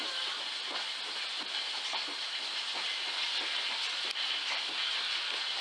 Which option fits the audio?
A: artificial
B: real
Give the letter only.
B